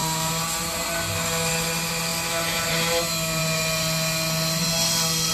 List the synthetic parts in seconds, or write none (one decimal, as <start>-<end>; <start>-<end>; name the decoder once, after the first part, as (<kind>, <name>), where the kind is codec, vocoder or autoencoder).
none